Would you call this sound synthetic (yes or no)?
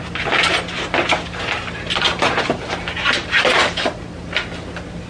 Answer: no